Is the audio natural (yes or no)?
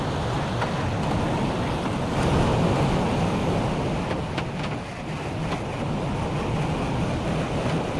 yes